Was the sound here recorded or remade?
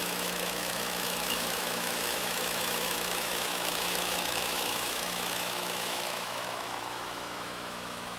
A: remade